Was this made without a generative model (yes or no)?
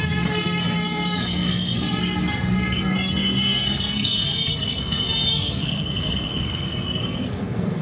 no